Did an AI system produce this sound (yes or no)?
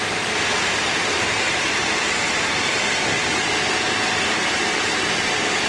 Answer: no